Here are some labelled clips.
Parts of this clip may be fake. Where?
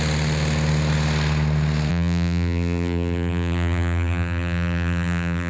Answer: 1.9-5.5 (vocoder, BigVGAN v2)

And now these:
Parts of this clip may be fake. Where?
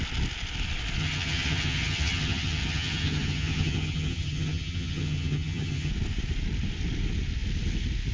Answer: 1.0-5.9 (vocoder, HiFi-GAN)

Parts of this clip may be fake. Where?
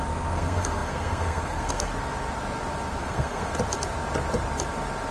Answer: 0.0-1.9 (codec, SNAC); 3.0-3.5